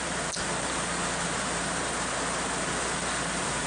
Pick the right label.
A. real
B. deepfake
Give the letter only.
A